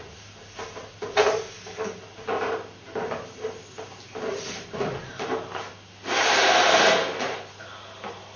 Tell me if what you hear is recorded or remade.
recorded